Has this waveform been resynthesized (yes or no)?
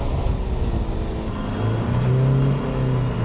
no